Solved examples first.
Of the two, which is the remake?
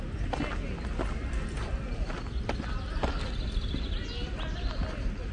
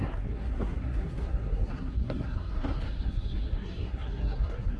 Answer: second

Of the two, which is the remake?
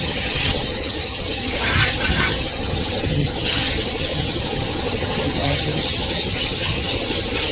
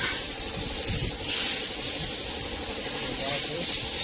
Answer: first